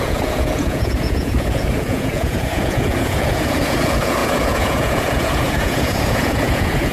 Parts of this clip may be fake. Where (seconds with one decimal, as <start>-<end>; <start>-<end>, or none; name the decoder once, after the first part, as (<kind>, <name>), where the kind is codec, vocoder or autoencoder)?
0.0-6.9 (vocoder, Vocos)